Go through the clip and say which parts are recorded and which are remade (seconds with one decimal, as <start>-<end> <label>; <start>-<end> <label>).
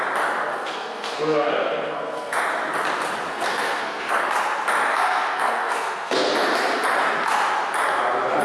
0.0-0.5 recorded; 0.5-2.4 remade; 2.4-3.3 recorded; 3.3-4.2 remade; 4.2-4.9 recorded; 4.9-6.3 remade; 6.3-8.4 recorded